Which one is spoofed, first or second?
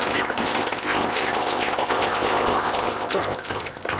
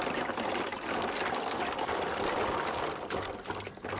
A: first